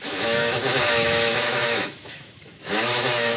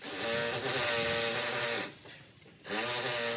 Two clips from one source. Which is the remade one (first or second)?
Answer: first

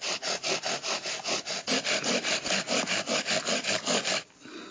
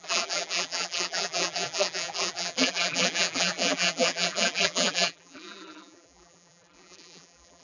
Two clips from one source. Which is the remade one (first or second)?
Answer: second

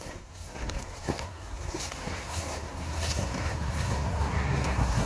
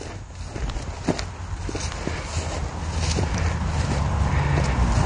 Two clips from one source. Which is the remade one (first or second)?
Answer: first